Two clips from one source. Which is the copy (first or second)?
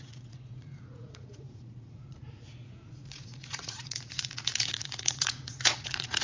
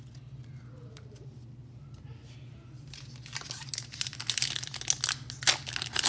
first